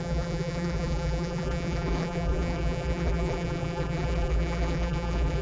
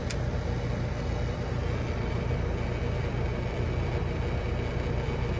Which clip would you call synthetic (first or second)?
first